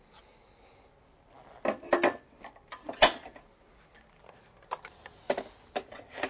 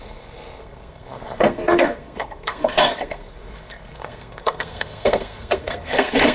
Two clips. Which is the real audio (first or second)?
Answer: first